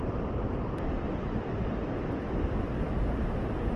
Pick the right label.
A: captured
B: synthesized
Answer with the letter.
B